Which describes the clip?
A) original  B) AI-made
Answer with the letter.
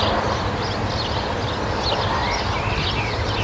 A